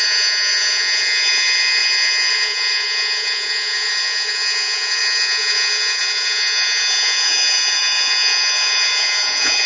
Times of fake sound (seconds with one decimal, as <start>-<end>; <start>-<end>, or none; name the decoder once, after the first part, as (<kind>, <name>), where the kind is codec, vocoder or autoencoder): 0.0-9.7 (vocoder, Vocos)